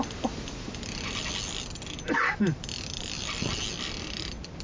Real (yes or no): yes